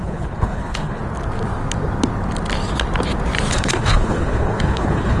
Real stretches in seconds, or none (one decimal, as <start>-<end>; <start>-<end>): 1.0-3.5